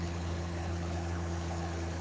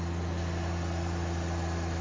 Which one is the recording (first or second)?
second